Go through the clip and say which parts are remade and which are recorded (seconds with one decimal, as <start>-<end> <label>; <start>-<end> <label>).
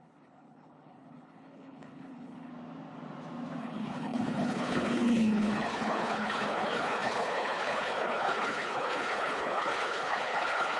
0.0-2.5 remade; 2.5-3.6 recorded; 3.6-10.8 remade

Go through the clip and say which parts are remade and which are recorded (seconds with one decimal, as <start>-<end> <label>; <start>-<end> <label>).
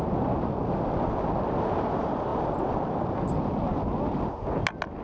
0.0-5.0 recorded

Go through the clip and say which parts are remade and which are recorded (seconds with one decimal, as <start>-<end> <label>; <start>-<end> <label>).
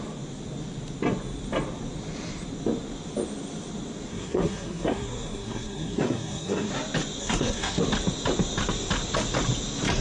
0.0-4.1 recorded; 4.1-6.7 remade; 6.7-7.2 recorded; 7.2-7.8 remade; 7.8-10.0 recorded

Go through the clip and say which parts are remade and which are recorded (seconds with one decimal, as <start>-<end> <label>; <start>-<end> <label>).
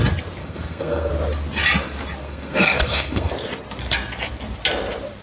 0.0-0.4 recorded; 0.4-1.1 remade; 1.1-2.2 recorded; 2.2-3.3 remade; 3.3-5.2 recorded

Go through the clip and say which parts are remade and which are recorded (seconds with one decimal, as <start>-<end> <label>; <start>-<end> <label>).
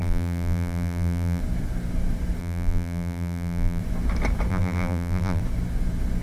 0.0-1.4 remade; 1.4-2.4 recorded; 2.4-3.8 remade; 3.8-4.5 recorded; 4.5-5.4 remade; 5.4-6.2 recorded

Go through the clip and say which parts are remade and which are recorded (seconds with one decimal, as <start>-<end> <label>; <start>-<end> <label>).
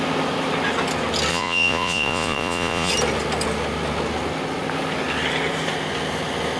0.0-1.3 recorded; 1.3-2.9 remade; 2.9-6.6 recorded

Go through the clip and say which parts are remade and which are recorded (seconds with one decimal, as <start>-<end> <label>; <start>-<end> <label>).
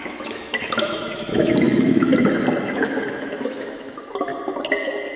0.0-2.1 remade; 2.1-2.7 recorded; 2.7-4.3 remade; 4.3-5.2 recorded